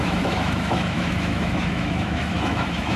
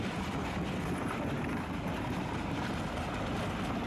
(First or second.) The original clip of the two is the second